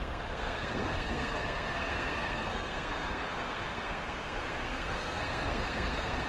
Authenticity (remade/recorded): remade